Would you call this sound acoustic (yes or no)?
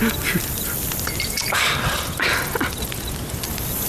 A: yes